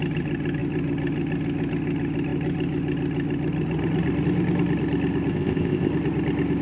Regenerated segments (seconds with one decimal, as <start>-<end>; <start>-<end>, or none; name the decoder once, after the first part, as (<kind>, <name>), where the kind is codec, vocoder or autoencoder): 5.3-5.9 (codec, ZipCodec)